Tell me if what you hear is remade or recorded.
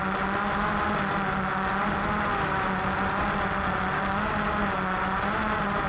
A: recorded